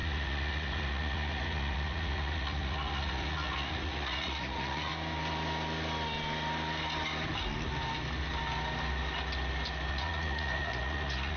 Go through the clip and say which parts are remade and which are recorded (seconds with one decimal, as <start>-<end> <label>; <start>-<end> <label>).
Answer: 0.0-4.9 remade; 4.9-9.9 recorded; 9.9-11.4 remade